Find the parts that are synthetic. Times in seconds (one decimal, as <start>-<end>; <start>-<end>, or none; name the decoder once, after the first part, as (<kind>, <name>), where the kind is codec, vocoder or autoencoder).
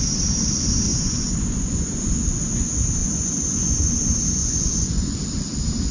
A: 0.9-2.1 (vocoder, Vocos); 3.0-3.9; 4.4-5.2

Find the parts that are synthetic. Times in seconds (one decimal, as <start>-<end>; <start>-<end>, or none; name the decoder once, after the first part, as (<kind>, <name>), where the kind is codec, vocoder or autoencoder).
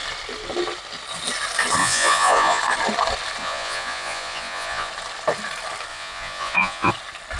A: 1.8-2.6 (vocoder, Vocos); 3.4-4.9; 5.9-6.9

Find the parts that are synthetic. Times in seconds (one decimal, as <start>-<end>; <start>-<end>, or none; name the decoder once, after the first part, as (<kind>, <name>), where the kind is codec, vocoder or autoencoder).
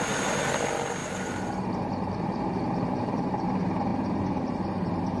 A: none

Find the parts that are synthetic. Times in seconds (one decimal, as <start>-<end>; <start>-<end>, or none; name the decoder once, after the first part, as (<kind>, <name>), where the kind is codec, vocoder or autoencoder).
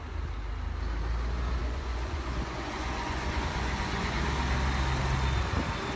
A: 1.6-4.2 (vocoder, Vocos)